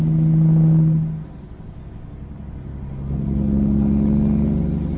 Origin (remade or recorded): recorded